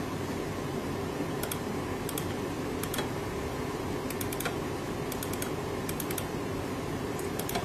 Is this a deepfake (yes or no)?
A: no